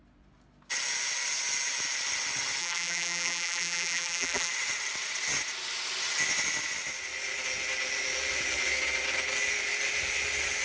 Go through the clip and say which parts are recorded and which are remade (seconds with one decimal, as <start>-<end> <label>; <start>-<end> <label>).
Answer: 0.0-2.6 recorded; 2.6-4.5 remade; 4.5-10.6 recorded